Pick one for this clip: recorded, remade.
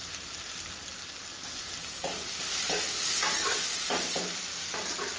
recorded